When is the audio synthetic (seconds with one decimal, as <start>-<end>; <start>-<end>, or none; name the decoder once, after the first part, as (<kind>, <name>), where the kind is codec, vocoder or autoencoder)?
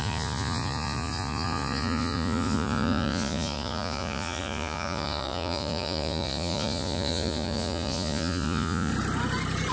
0.0-8.9 (vocoder, Vocos)